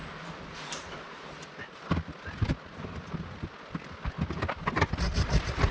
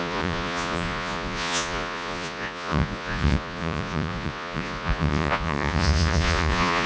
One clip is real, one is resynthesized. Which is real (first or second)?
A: first